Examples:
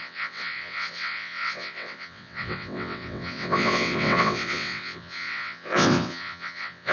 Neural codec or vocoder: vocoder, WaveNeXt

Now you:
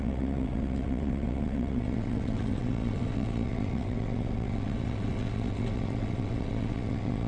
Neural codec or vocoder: vocoder, WaveNeXt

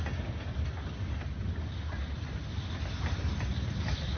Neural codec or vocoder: none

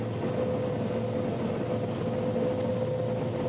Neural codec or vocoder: none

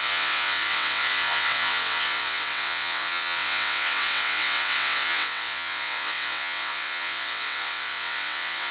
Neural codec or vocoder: vocoder, WaveNeXt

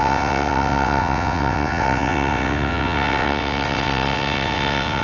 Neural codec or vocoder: vocoder, WaveNeXt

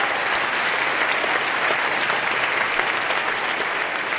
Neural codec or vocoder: none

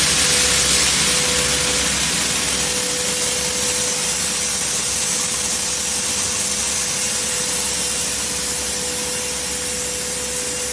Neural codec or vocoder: none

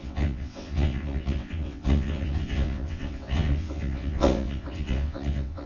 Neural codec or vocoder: vocoder, WaveNeXt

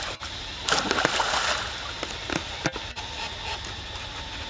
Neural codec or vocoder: none